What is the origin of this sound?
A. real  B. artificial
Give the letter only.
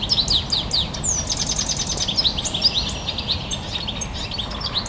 A